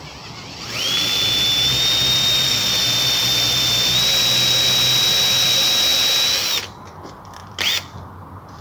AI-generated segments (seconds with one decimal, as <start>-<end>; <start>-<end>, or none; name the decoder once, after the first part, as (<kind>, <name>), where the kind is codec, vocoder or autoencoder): none